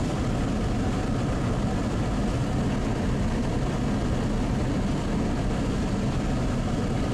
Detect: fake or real real